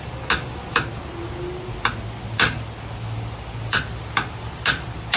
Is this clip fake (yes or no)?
no